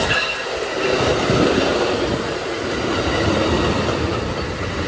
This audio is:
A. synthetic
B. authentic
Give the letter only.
B